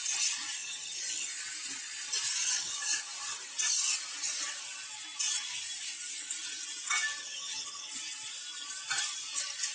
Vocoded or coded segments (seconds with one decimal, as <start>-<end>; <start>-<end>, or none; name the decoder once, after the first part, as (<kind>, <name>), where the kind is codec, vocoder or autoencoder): 0.6-1.3 (vocoder, HiFi-GAN); 2.4-2.9; 7.2-7.9